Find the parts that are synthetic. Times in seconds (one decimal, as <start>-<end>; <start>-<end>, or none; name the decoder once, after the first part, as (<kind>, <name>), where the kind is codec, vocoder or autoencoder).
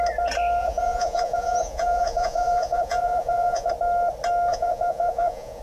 0.6-3.7 (vocoder, Vocos); 4.5-5.6